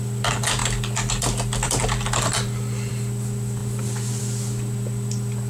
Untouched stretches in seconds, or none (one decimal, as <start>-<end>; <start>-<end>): 0.0-0.6; 2.9-3.6; 4.2-5.5